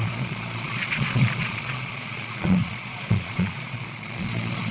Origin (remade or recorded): remade